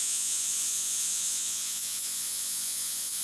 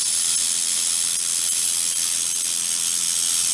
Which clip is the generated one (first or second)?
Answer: first